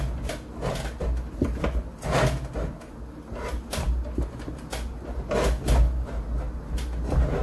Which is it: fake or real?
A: real